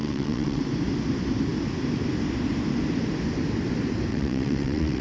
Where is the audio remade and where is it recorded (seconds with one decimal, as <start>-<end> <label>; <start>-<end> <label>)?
0.0-0.6 remade; 0.6-4.1 recorded; 4.1-5.0 remade